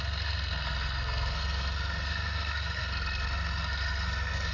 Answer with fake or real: fake